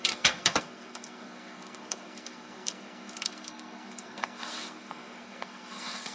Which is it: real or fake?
fake